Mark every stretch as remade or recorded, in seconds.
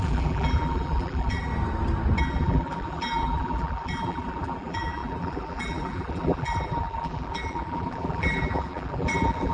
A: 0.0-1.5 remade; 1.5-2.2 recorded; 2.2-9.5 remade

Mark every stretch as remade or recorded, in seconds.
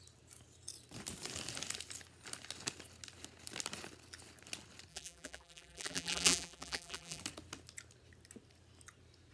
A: 0.0-4.9 recorded; 4.9-7.2 remade; 7.2-9.3 recorded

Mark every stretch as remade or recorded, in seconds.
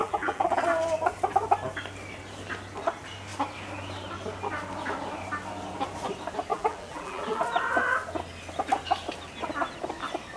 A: 0.0-0.6 remade; 0.6-6.5 recorded; 6.5-7.4 remade; 7.4-10.4 recorded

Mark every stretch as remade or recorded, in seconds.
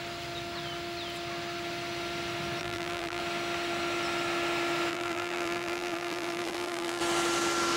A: 0.0-2.6 recorded; 2.6-3.2 remade; 3.2-4.9 recorded; 4.9-7.0 remade; 7.0-7.8 recorded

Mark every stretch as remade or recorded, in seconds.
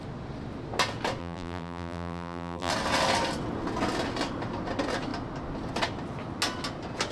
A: 0.0-1.2 recorded; 1.2-2.7 remade; 2.7-7.1 recorded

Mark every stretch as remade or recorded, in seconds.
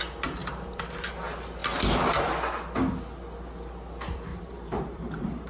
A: 0.0-0.4 recorded; 0.4-1.1 remade; 1.1-4.3 recorded; 4.3-5.5 remade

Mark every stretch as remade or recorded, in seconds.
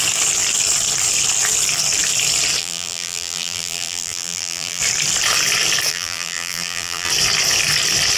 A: 0.0-2.6 recorded; 2.6-4.8 remade; 4.8-5.9 recorded; 5.9-7.1 remade; 7.1-8.2 recorded